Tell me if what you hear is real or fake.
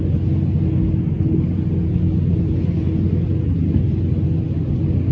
real